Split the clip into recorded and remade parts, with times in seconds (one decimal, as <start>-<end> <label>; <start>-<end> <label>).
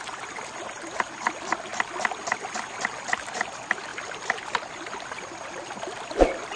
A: 0.0-6.6 recorded